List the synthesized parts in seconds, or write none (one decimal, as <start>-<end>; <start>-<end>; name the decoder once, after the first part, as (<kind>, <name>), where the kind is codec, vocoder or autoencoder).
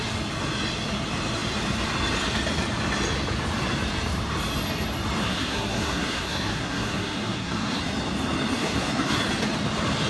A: 5.2-7.8 (codec, SNAC); 8.6-9.2